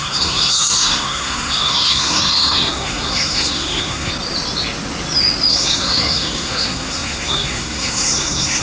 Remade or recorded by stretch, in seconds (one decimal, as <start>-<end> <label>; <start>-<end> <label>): 0.0-4.1 remade; 4.1-5.5 recorded; 5.5-8.6 remade